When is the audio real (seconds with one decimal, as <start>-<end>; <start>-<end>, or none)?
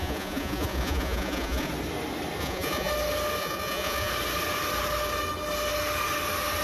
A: 1.7-2.4; 2.9-3.4; 4.1-6.6